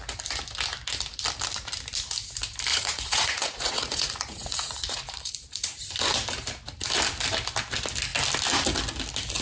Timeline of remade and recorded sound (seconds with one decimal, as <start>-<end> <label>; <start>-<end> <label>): 0.0-2.7 recorded; 2.7-5.8 remade; 5.8-9.4 recorded